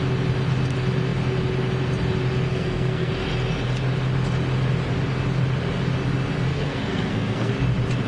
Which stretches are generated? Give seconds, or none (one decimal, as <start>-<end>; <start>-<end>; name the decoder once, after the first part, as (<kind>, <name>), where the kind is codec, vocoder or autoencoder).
2.5-3.1 (codec, SNAC); 6.5-7.5

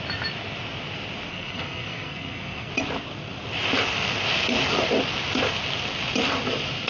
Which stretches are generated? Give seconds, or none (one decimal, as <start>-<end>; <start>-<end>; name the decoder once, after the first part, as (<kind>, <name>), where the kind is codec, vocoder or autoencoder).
1.3-2.7 (codec, SNAC)

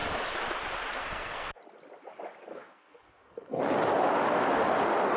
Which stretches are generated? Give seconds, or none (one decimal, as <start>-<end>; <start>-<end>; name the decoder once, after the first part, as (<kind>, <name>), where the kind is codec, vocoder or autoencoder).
1.0-1.6 (codec, SNAC); 2.5-3.6